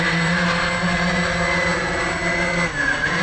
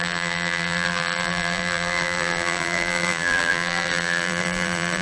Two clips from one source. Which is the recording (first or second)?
first